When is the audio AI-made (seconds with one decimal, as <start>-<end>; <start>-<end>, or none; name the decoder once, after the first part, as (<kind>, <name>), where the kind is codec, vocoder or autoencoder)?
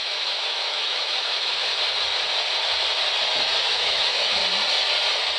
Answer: 0.0-1.7 (autoencoder, DAC-VAE); 3.7-4.4